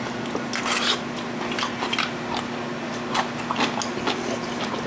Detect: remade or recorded recorded